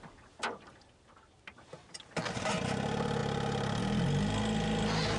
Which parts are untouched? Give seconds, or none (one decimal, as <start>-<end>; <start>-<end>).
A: 0.0-5.2